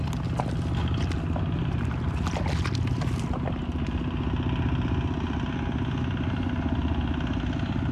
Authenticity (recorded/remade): recorded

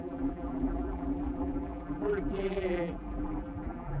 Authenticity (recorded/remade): remade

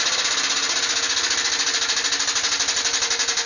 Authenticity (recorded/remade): recorded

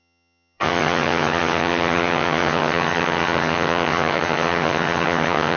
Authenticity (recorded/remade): remade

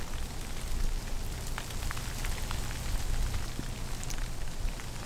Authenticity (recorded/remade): recorded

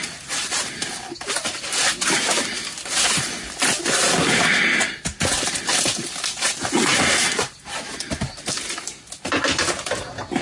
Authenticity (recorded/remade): recorded